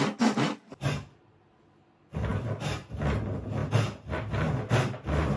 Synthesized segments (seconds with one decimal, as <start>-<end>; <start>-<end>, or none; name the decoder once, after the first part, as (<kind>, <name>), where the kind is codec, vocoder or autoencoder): none